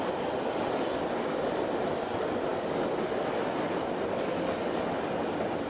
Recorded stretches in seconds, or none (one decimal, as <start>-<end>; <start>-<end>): 0.0-5.7